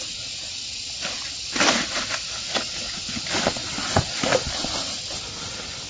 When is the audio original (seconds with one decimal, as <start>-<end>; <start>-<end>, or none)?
0.0-5.9